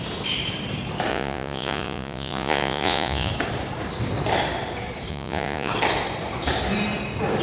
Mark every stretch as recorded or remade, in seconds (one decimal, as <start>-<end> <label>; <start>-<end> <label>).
0.0-1.1 recorded; 1.1-3.3 remade; 3.3-5.1 recorded; 5.1-5.7 remade; 5.7-7.4 recorded